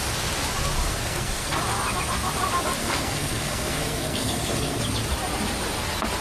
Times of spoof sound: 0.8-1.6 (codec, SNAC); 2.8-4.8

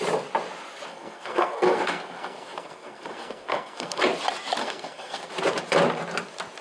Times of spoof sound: 0.9-4.0 (codec, SNAC); 4.6-5.3

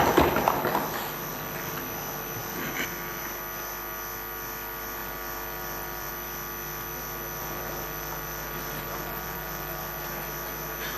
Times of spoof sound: 1.3-1.8 (vocoder, BigVGAN v2); 2.4-3.2; 5.0-6.1; 7.4-9.8

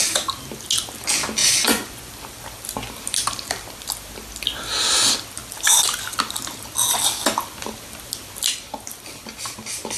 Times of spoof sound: 1.4-2.1 (vocoder, Vocos)

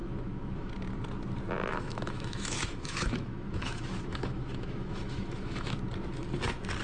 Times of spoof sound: 0.0-0.7 (autoencoder, DAC-VAE); 1.7-5.8